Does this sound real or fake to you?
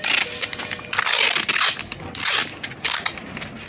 real